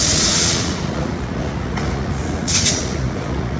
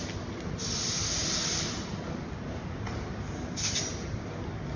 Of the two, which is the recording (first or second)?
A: second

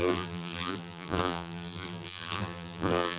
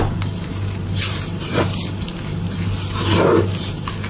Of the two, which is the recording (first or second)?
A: second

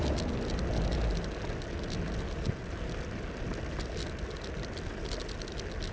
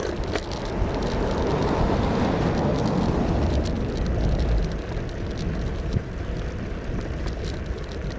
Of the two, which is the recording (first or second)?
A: first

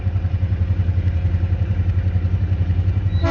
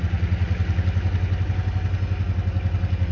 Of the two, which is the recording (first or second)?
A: second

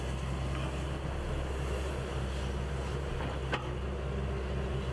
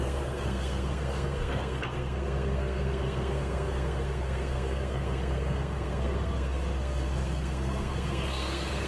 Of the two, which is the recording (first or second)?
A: first